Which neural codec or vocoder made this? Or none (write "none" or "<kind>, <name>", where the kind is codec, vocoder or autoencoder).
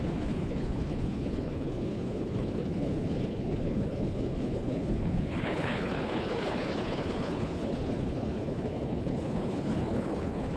codec, HILCodec